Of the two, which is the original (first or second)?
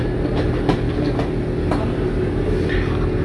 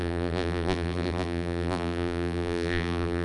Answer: first